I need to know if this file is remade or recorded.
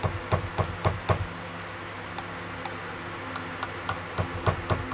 recorded